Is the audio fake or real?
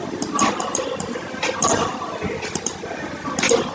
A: real